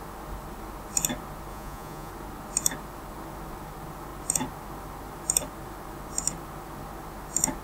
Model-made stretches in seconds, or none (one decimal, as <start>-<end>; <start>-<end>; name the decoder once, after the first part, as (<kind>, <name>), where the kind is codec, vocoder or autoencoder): 1.5-2.1 (vocoder, Vocos)